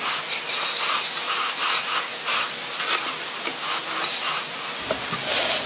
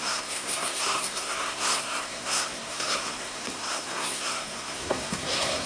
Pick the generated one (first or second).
second